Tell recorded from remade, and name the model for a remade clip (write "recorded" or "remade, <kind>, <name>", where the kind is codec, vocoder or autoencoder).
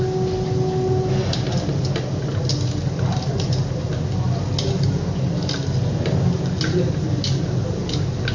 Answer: recorded